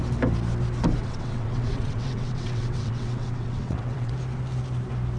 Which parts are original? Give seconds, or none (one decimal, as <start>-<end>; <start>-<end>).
0.0-1.0; 4.1-5.2